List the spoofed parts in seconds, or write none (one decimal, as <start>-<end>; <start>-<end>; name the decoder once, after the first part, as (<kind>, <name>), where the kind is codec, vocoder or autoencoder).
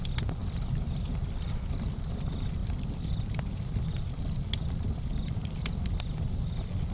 2.6-3.9 (vocoder, BigVGAN v2)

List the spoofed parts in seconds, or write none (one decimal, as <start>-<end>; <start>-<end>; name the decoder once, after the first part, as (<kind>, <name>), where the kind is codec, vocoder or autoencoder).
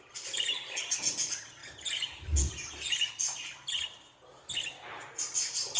none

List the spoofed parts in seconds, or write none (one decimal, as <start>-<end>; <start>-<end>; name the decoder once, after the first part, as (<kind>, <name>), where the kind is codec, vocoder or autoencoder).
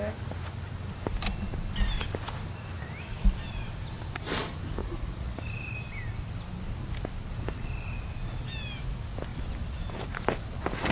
4.8-5.4 (vocoder, Vocos)